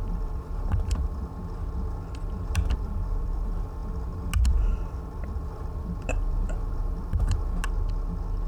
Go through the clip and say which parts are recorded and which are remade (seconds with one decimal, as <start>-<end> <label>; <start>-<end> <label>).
0.0-1.3 remade; 1.3-2.7 recorded; 2.7-3.8 remade; 3.8-4.4 recorded; 4.4-7.6 remade; 7.6-8.5 recorded